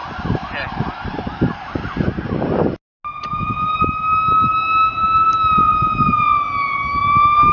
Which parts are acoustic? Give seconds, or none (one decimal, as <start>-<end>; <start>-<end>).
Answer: 0.0-7.5